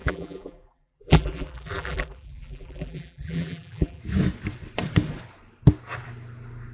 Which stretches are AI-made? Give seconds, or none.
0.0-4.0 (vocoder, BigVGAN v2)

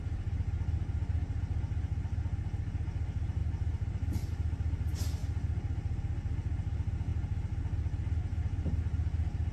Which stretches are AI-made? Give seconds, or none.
none